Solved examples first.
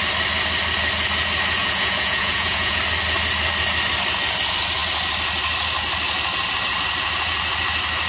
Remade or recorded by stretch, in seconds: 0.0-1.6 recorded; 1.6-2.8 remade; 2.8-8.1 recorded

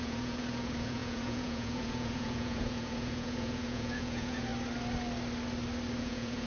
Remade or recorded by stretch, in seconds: 0.0-4.5 remade; 4.5-6.0 recorded; 6.0-6.5 remade

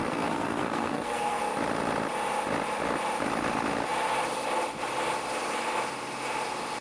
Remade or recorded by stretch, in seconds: 0.0-1.4 remade; 1.4-6.8 recorded